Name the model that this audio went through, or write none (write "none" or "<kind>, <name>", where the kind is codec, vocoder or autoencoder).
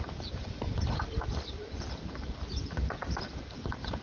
vocoder, BigVGAN v2